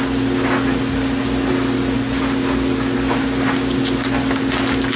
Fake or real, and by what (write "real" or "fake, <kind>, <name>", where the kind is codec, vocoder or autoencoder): real